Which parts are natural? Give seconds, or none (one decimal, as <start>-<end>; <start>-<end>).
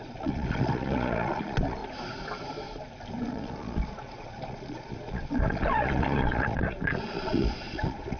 1.8-3.1